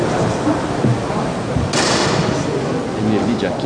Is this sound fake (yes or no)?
no